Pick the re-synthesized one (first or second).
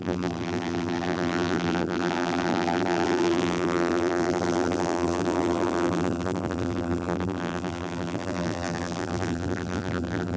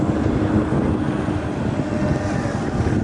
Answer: first